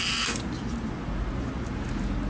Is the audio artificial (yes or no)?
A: no